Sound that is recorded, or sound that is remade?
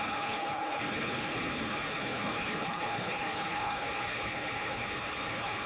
remade